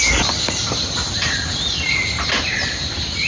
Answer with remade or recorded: recorded